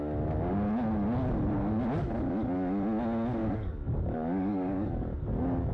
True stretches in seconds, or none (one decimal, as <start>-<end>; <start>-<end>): 0.0-3.4

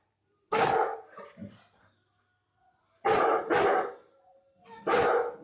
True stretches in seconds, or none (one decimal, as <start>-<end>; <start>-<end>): 0.0-5.4

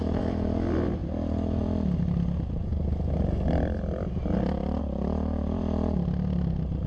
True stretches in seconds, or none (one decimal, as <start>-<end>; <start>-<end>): 0.0-6.9

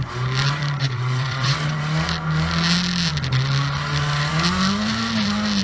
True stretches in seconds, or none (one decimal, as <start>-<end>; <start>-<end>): 0.0-0.8; 1.8-5.6